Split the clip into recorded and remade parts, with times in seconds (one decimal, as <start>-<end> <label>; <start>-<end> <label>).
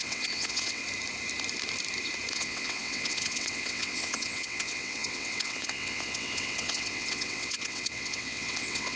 0.0-0.8 remade; 0.8-2.3 recorded; 2.3-9.0 remade